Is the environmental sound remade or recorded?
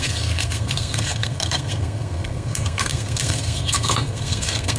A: remade